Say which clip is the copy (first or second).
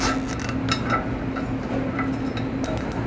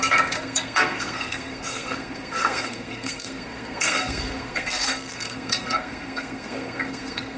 second